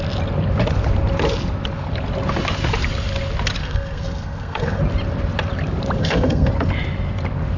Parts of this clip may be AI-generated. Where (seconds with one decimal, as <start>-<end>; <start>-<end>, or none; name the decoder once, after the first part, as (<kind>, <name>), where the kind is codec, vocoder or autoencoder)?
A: 3.6-4.8 (codec, SNAC); 6.0-6.5